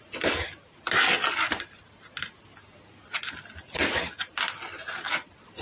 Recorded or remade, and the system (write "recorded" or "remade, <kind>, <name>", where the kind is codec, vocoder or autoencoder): recorded